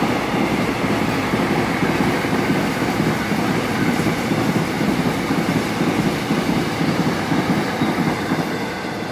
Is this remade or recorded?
recorded